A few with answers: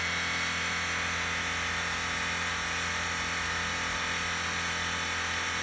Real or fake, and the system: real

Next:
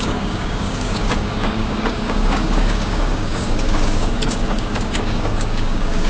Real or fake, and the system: fake, codec, DAC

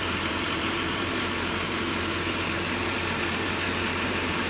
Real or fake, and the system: fake, vocoder, BigVGAN v2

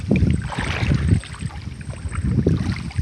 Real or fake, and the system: real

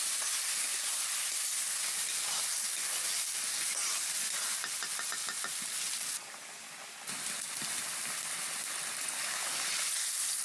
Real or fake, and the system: real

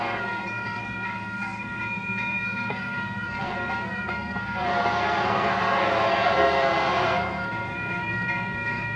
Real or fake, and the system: fake, codec, SNAC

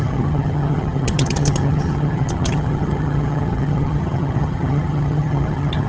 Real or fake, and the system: fake, vocoder, HiFi-GAN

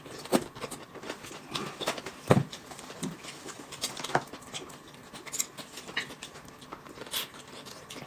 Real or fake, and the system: real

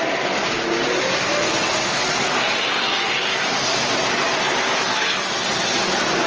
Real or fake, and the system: real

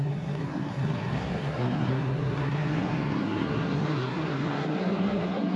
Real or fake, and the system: fake, codec, SNAC